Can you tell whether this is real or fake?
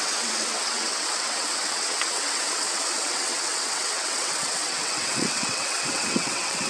fake